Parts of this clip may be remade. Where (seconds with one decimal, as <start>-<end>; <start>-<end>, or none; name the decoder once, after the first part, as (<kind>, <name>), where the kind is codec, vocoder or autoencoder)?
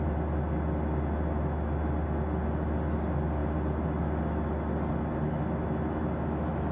none